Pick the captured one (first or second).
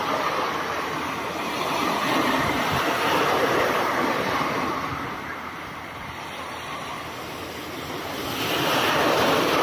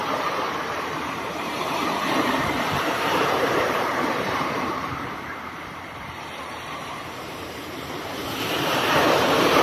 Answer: first